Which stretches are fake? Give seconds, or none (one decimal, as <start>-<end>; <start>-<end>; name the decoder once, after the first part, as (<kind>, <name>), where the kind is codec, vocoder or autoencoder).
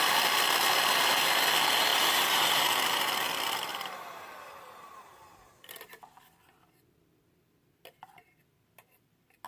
1.9-3.1 (vocoder, BigVGAN v2); 3.7-5.5